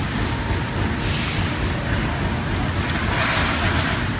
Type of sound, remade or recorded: recorded